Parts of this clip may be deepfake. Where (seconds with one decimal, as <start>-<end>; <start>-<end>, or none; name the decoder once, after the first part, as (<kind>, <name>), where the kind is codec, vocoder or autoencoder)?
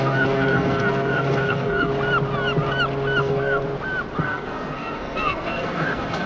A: 0.0-1.9 (codec, SNAC); 3.2-3.6; 4.2-6.3